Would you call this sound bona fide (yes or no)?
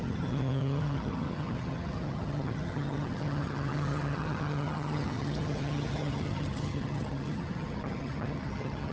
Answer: no